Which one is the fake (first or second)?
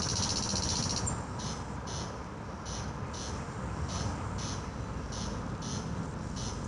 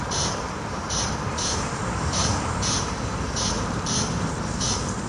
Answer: second